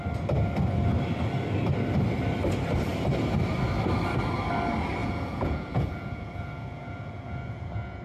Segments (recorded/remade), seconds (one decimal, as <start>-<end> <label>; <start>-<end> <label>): 0.0-5.0 recorded; 5.0-8.0 remade